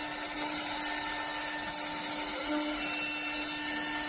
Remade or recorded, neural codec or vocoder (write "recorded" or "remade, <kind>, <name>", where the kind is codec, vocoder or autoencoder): recorded